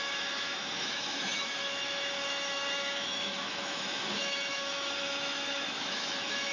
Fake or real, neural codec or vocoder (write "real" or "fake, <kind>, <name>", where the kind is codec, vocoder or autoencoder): fake, autoencoder, DAC-VAE